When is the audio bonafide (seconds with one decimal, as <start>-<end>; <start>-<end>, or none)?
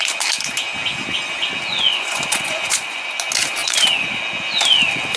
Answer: 0.0-1.7; 3.1-3.6; 4.2-5.2